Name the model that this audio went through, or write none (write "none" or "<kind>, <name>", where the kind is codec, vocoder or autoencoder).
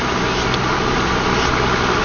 none